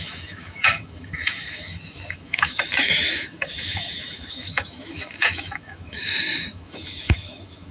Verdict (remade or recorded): remade